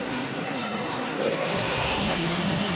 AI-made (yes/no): yes